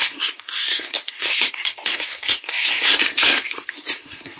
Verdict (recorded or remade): remade